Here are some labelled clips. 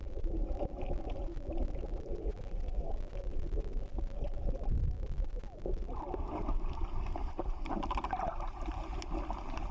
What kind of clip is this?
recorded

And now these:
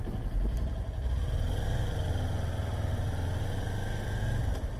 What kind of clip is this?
recorded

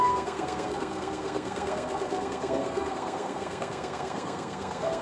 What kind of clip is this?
remade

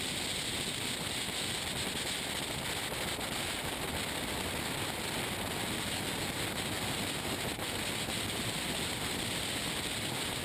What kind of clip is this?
recorded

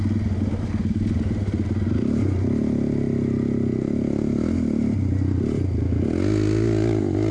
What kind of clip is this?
recorded